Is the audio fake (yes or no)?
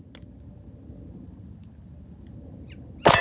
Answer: no